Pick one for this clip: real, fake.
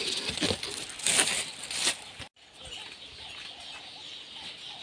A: real